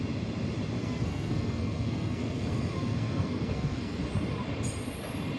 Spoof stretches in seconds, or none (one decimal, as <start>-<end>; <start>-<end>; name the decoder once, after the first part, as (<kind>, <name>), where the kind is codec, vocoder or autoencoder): 0.8-4.0 (codec, SNAC)